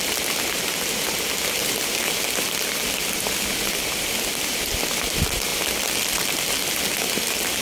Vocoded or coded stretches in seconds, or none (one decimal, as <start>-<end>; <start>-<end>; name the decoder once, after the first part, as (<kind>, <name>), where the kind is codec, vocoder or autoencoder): none